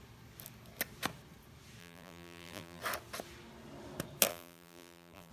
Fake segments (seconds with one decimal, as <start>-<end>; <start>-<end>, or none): 1.8-2.8; 4.3-5.3